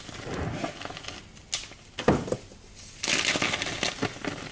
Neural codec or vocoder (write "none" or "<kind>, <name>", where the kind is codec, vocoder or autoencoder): none